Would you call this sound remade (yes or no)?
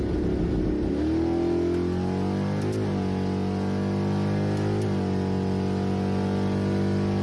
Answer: no